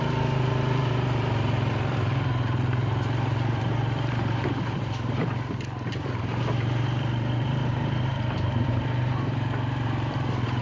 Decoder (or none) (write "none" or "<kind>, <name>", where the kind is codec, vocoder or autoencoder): vocoder, BigVGAN v2